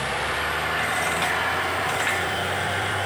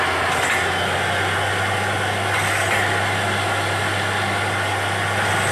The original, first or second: second